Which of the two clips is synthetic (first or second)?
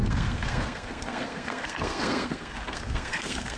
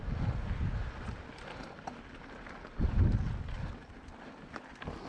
first